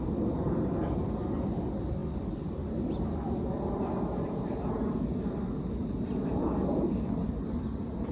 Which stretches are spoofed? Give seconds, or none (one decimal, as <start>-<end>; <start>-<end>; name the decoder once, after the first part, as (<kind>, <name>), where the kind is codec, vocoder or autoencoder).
none